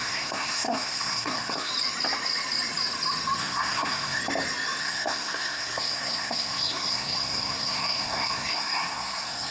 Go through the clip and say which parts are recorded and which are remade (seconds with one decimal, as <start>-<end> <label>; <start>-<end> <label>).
0.0-1.7 remade; 1.7-3.4 recorded; 3.4-4.2 remade; 4.2-4.8 recorded; 4.8-9.5 remade